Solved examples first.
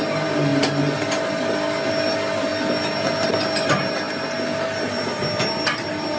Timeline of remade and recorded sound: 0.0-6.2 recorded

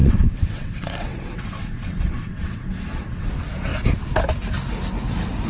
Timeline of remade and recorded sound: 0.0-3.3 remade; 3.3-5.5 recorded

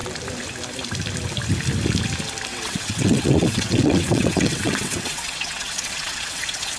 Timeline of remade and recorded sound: 0.0-2.5 recorded; 2.5-6.8 remade

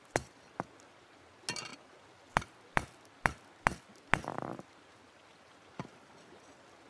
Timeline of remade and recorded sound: 0.0-6.9 recorded

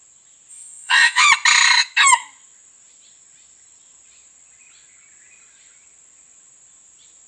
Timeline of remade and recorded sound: 0.0-0.5 recorded; 0.5-1.3 remade; 1.3-7.3 recorded

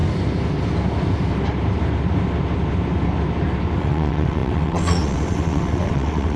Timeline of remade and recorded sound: 0.0-3.8 recorded; 3.8-6.4 remade

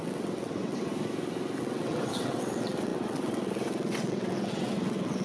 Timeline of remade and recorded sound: 0.0-0.9 remade; 0.9-1.6 recorded; 1.6-5.2 remade

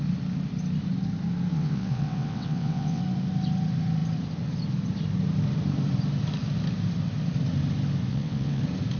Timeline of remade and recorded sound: 0.0-1.5 recorded; 1.5-3.0 remade; 3.0-8.1 recorded; 8.1-8.6 remade; 8.6-9.0 recorded